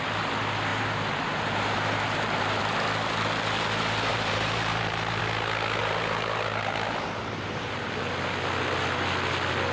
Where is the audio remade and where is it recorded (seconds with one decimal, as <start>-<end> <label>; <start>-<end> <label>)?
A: 0.0-0.7 recorded; 0.7-2.6 remade; 2.6-4.1 recorded; 4.1-5.2 remade; 5.2-5.8 recorded; 5.8-8.1 remade; 8.1-9.7 recorded